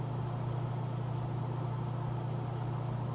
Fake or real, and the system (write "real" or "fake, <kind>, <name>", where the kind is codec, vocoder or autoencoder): real